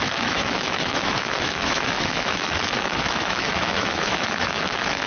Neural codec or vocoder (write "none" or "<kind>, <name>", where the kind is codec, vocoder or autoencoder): autoencoder, DAC-VAE